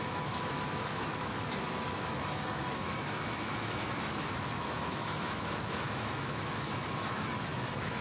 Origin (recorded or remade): remade